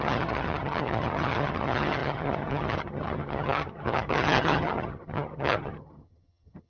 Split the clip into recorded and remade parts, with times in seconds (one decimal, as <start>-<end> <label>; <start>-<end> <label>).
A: 0.0-6.7 remade